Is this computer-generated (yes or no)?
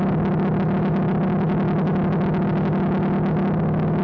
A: no